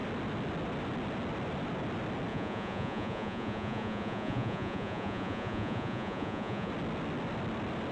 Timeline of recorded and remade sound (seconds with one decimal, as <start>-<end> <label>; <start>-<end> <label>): 0.0-2.3 recorded; 2.3-6.7 remade; 6.7-7.9 recorded